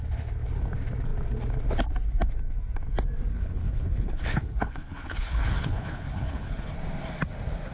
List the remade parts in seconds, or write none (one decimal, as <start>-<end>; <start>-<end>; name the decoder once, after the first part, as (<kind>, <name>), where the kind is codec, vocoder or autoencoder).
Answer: 3.3-6.7 (codec, HILCodec)